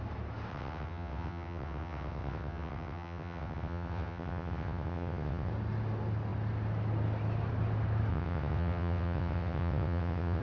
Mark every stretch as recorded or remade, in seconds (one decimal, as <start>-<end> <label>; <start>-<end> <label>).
0.0-0.5 recorded; 0.5-5.5 remade; 5.5-8.1 recorded; 8.1-10.4 remade